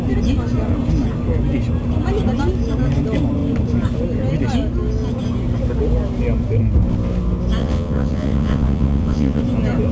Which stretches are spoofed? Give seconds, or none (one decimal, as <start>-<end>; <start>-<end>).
7.6-9.4